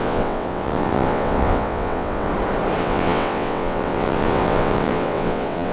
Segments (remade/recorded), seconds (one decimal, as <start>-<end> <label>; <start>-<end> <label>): 0.0-2.3 remade; 2.3-2.8 recorded; 2.8-5.7 remade